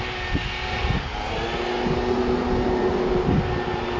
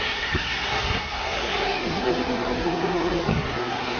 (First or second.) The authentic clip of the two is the first